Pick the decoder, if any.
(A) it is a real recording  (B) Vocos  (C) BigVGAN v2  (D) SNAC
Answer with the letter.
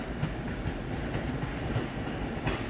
A